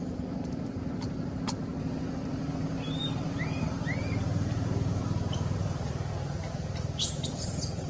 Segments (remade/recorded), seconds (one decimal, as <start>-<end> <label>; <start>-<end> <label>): 0.0-1.7 remade; 1.7-2.4 recorded; 2.4-7.9 remade